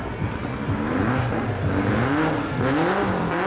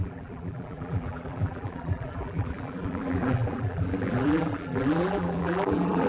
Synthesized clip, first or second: second